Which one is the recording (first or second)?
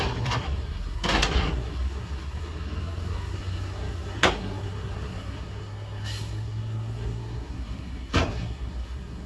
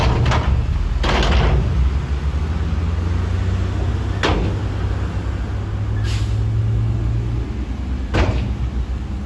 second